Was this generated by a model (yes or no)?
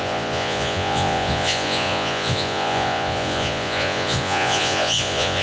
yes